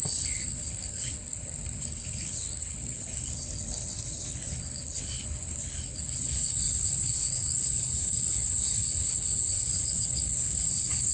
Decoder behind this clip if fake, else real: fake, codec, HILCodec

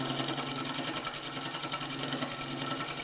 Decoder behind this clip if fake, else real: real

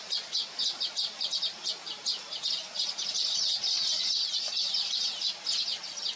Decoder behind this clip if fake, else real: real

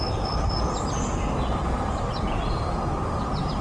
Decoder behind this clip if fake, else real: real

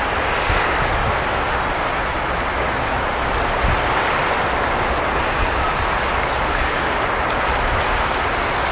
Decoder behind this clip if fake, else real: real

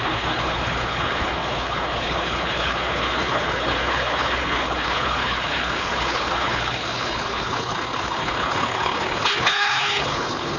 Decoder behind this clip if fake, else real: fake, codec, HILCodec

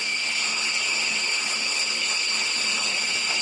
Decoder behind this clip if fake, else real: fake, codec, HILCodec